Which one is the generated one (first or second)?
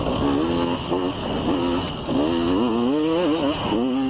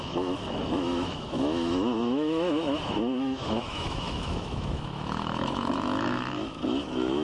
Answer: second